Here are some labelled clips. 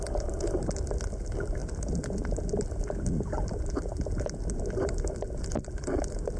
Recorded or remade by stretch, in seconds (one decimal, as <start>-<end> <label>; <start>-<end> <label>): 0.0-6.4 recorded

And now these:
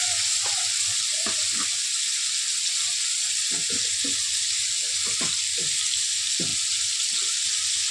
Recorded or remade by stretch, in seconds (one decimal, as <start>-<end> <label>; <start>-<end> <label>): 0.0-7.9 recorded

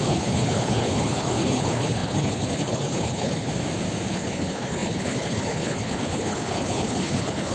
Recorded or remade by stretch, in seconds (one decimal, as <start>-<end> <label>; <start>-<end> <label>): 0.0-3.5 remade; 3.5-4.1 recorded; 4.1-7.5 remade

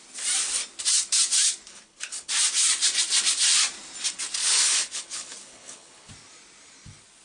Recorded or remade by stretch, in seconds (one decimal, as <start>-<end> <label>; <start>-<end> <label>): 0.0-1.7 recorded; 1.7-2.3 remade; 2.3-4.4 recorded; 4.4-6.1 remade; 6.1-7.2 recorded